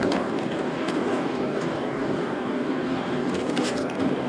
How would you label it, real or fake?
fake